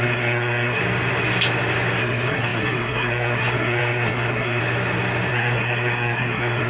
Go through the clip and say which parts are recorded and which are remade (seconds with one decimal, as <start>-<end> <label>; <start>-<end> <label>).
0.0-0.8 remade; 0.8-2.0 recorded; 2.0-4.6 remade; 4.6-5.3 recorded; 5.3-6.7 remade